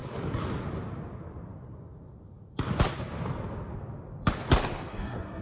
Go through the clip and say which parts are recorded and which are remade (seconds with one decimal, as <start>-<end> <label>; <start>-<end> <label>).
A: 0.0-4.9 recorded; 4.9-5.4 remade